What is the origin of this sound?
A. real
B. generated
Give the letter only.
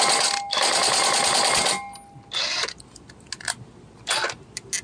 A